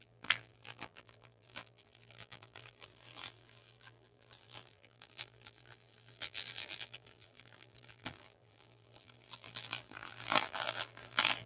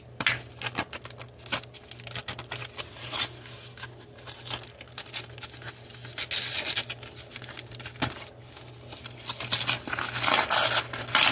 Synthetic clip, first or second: first